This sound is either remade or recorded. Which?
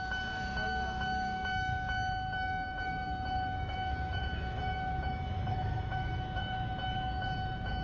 remade